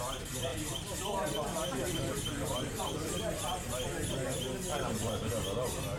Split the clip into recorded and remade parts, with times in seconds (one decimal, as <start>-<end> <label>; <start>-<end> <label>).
0.0-0.5 recorded; 0.5-4.1 remade; 4.1-4.7 recorded; 4.7-5.3 remade; 5.3-6.0 recorded